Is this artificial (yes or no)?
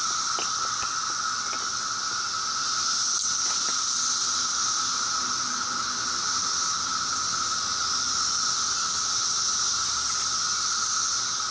no